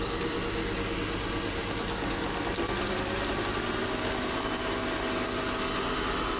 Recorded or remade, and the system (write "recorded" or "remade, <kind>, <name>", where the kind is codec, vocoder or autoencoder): recorded